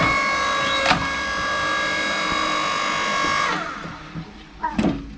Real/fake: real